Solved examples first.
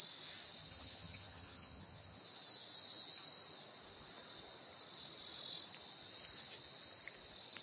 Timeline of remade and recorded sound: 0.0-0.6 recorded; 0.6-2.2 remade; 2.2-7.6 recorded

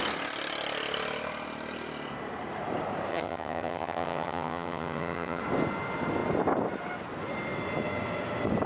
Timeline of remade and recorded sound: 0.0-3.1 recorded; 3.1-5.4 remade; 5.4-8.7 recorded

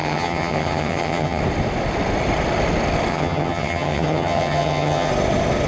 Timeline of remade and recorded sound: 0.0-1.4 remade; 1.4-3.1 recorded; 3.1-5.1 remade; 5.1-5.7 recorded